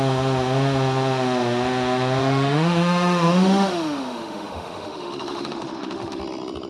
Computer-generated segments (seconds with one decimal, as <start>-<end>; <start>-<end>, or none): 2.2-6.2